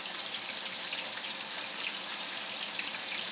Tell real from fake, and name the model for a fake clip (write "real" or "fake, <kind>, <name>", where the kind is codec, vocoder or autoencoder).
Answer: real